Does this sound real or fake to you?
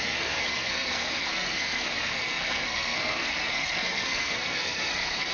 fake